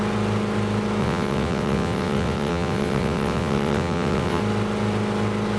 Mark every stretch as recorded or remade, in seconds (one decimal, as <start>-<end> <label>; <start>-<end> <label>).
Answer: 0.0-1.0 recorded; 1.0-4.4 remade; 4.4-5.6 recorded